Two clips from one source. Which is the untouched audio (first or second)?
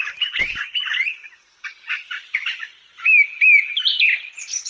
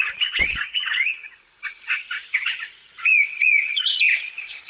first